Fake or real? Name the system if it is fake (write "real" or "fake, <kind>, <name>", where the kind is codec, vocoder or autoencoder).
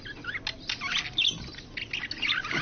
real